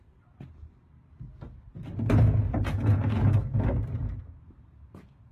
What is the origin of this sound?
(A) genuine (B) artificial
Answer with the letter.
A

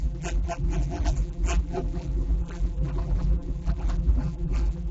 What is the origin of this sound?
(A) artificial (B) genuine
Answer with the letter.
A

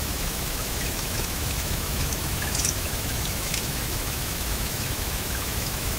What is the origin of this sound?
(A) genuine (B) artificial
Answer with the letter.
B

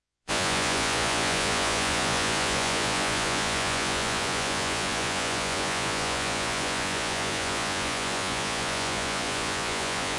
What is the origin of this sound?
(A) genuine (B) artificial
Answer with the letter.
B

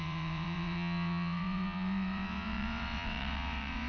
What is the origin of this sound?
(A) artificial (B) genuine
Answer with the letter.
A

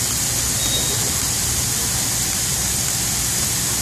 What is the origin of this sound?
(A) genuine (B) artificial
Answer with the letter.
A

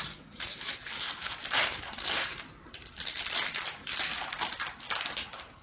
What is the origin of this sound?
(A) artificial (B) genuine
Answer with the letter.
B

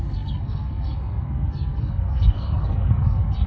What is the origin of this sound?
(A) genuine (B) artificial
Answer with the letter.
B